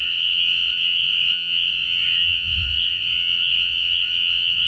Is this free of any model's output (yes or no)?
no